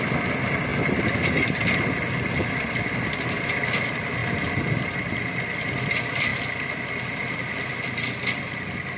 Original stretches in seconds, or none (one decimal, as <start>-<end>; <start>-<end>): 0.0-9.0